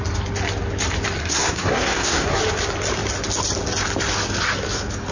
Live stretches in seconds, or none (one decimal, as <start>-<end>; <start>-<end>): 0.0-1.2; 2.4-5.1